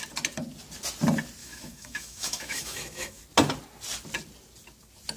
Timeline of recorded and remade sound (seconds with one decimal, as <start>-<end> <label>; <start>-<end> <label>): 0.0-1.4 recorded; 1.4-3.2 remade; 3.2-5.2 recorded